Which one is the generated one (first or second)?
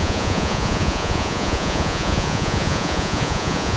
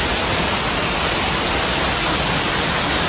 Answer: first